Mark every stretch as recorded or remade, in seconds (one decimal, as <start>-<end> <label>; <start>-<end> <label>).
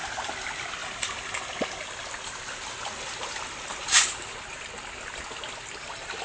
0.0-6.2 recorded